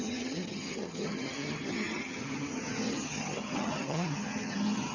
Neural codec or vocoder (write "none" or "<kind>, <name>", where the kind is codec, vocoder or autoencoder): vocoder, HiFi-GAN